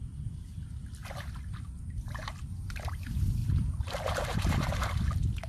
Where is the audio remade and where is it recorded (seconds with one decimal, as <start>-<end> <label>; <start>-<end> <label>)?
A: 0.0-1.0 recorded; 1.0-2.9 remade; 2.9-3.4 recorded; 3.4-5.0 remade; 5.0-5.5 recorded